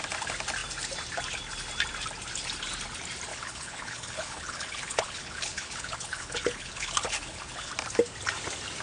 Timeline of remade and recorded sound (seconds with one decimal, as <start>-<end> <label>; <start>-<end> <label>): 0.0-3.3 recorded; 3.3-7.7 remade; 7.7-8.8 recorded